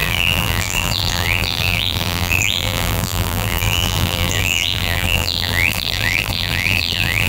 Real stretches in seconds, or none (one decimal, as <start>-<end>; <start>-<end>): none